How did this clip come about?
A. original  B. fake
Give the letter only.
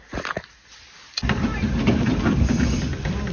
A